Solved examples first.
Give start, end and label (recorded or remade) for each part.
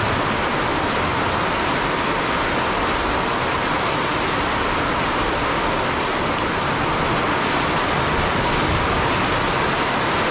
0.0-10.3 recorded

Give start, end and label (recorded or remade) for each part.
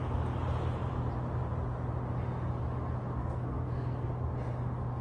0.0-3.2 recorded; 3.2-4.1 remade; 4.1-5.0 recorded